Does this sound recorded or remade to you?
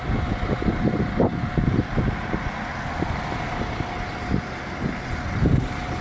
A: recorded